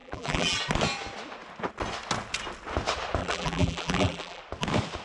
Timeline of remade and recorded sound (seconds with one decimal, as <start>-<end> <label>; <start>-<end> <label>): 0.0-0.6 remade; 0.6-3.2 recorded; 3.2-4.4 remade; 4.4-5.0 recorded

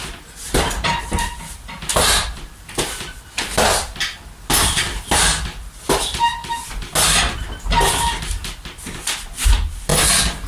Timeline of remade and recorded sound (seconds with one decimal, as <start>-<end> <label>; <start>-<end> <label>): 0.0-1.9 remade; 1.9-10.5 recorded

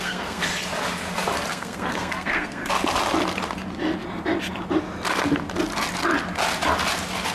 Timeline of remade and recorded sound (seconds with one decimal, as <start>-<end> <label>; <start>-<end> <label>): 0.0-0.5 remade; 0.5-1.5 recorded; 1.5-2.6 remade; 2.6-7.3 recorded

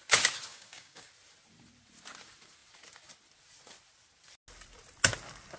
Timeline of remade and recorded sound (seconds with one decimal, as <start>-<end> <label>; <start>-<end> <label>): 0.0-0.5 recorded; 0.5-1.1 remade; 1.1-5.6 recorded

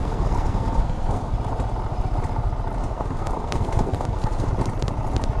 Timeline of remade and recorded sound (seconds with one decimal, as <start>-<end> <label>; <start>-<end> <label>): 0.0-1.3 remade; 1.3-2.8 recorded; 2.8-4.5 remade; 4.5-5.4 recorded

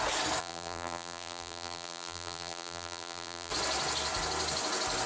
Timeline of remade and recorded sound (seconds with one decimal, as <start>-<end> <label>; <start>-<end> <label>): 0.0-0.4 recorded; 0.4-3.5 remade; 3.5-5.1 recorded

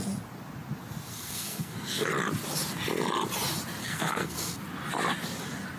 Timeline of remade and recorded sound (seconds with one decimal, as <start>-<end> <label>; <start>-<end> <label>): 0.0-1.1 recorded; 1.1-2.1 remade; 2.1-3.8 recorded; 3.8-4.6 remade; 4.6-5.8 recorded

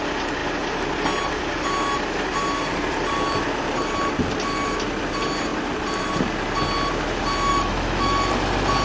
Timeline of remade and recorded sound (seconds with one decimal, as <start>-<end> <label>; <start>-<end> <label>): 0.0-7.5 recorded; 7.5-8.3 remade; 8.3-8.8 recorded